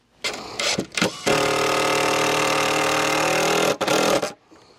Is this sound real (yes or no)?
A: yes